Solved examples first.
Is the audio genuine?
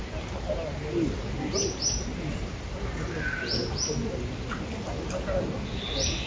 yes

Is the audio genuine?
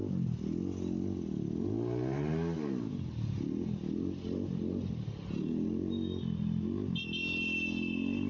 yes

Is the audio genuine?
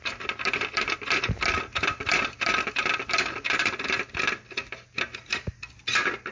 yes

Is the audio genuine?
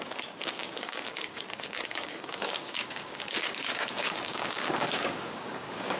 no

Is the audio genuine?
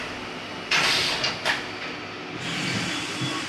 yes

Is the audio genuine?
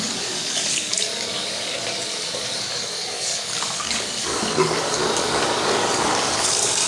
no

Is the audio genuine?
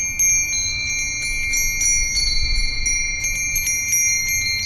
yes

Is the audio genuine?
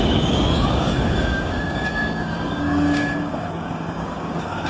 no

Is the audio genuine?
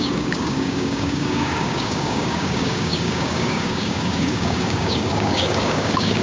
no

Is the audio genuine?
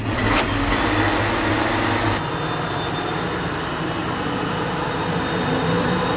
yes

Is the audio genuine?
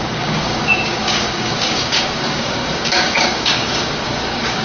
no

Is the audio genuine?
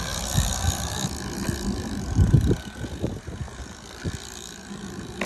yes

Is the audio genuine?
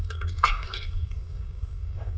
no